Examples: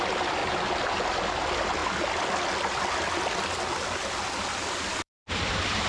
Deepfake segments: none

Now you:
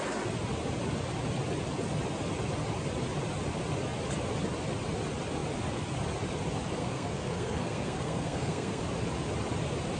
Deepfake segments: 6.8-8.8 (codec, SNAC)

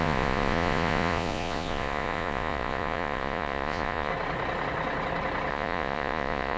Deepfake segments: 0.0-4.1 (vocoder, Vocos); 5.5-6.6